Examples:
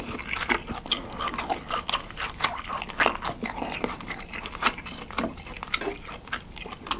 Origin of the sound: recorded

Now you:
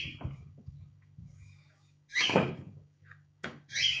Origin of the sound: remade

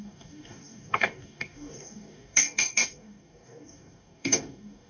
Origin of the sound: remade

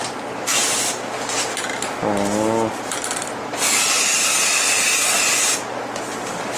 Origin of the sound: recorded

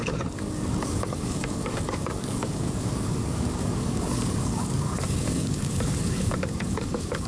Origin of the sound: remade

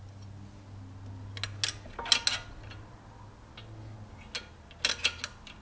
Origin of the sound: recorded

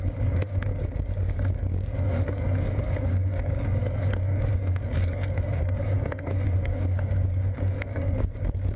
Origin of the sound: remade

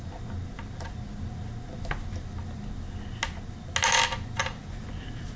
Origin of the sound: recorded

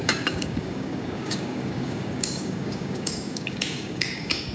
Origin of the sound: remade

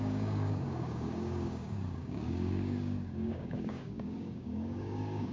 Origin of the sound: remade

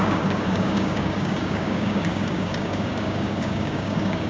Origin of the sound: remade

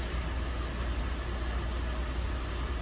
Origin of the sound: recorded